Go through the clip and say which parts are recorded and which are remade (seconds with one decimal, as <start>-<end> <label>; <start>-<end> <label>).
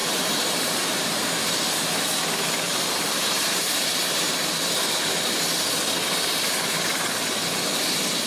0.0-1.4 remade; 1.4-2.7 recorded; 2.7-5.4 remade; 5.4-8.3 recorded